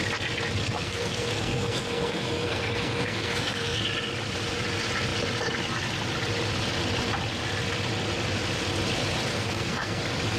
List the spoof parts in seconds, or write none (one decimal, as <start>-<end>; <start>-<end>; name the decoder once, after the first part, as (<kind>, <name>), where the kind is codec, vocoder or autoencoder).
0.6-3.8 (codec, SNAC); 9.3-10.0